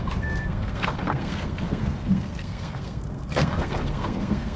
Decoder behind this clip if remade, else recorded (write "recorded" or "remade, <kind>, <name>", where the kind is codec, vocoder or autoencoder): remade, codec, SNAC